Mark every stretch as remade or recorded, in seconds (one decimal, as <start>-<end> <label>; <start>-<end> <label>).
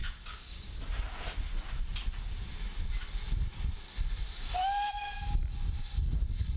0.0-0.7 remade; 0.7-6.6 recorded